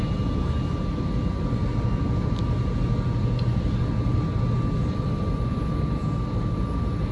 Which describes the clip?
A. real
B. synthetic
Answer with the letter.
A